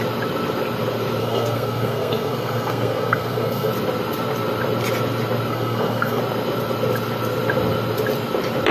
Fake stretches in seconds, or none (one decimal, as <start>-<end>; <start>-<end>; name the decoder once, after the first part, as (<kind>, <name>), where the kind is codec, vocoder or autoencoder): 1.2-3.7 (codec, SNAC); 5.5-6.2